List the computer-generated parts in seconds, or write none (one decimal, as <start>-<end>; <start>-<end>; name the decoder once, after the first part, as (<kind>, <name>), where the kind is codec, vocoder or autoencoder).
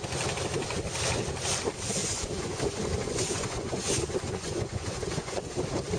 2.0-5.5 (vocoder, Vocos)